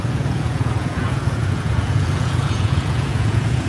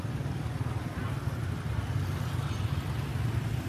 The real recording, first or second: second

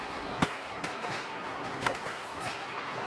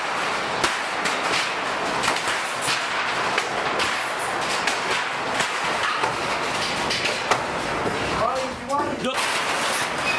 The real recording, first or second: second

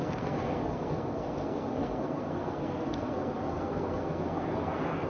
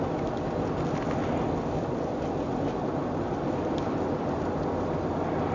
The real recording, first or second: second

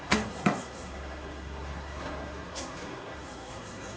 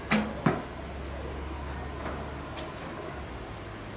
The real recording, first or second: second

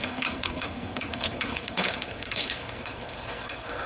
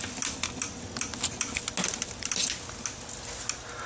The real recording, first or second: second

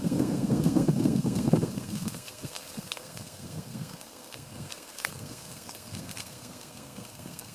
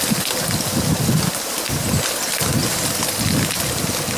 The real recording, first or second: second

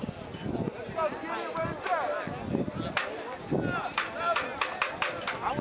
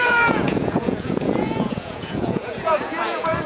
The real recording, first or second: first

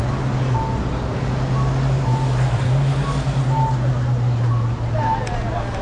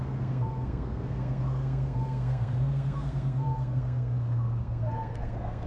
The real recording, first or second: first